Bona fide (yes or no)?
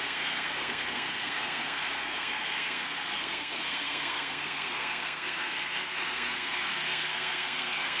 no